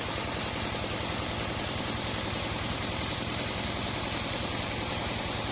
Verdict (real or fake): fake